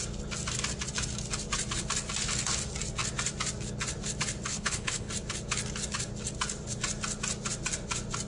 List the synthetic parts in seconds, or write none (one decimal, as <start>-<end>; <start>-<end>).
4.5-5.1